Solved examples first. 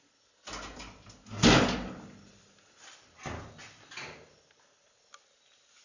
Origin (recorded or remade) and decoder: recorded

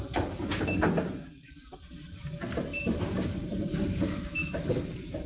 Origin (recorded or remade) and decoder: remade, vocoder, BigVGAN v2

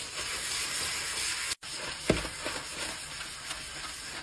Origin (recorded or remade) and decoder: recorded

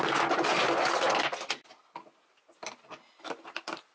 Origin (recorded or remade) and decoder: recorded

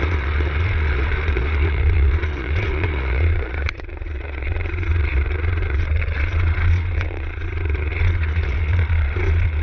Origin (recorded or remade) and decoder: remade, vocoder, Vocos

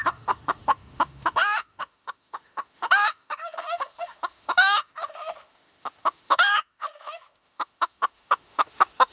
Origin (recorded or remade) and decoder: remade, autoencoder, DAC-VAE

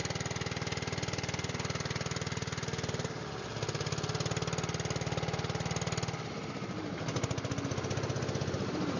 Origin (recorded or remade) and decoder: recorded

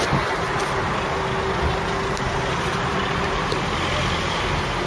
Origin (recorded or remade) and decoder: recorded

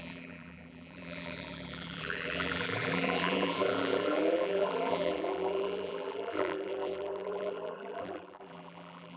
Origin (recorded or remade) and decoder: remade, vocoder, BigVGAN v2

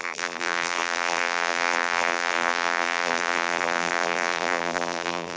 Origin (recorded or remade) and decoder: remade, vocoder, BigVGAN v2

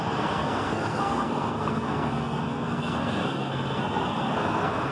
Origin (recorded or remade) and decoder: remade, codec, SNAC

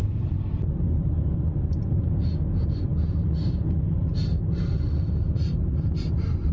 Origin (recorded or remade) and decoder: recorded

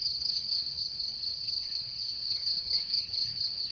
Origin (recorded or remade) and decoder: remade, codec, HILCodec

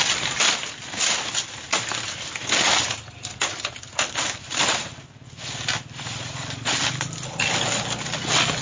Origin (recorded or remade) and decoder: recorded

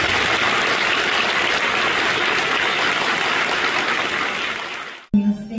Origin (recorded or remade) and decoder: recorded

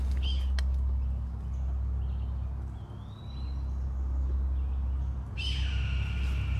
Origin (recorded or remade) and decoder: recorded